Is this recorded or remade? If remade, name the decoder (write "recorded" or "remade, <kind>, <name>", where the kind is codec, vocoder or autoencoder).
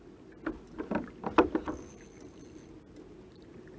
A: recorded